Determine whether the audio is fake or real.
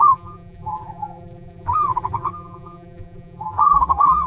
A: fake